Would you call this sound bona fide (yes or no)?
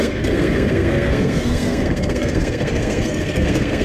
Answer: no